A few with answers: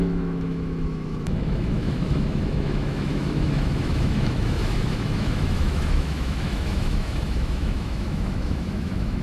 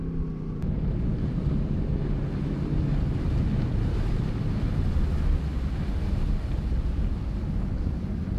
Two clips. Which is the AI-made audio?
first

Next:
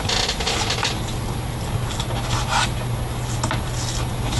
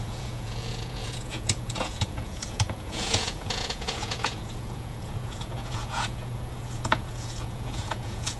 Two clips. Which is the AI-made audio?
second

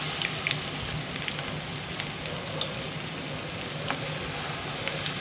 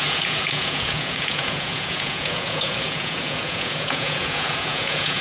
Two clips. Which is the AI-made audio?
second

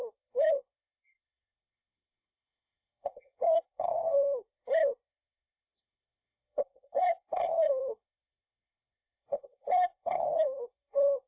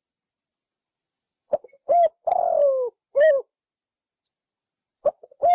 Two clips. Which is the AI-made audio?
first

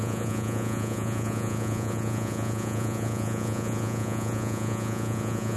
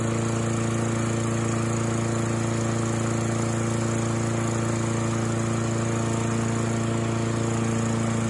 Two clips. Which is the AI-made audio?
first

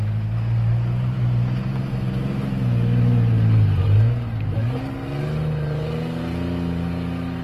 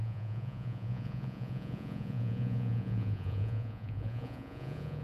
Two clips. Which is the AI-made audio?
second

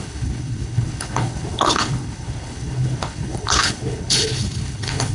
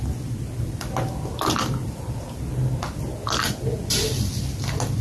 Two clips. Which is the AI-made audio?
first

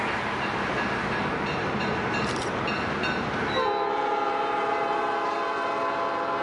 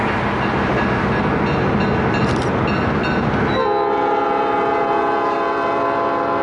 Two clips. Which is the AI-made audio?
first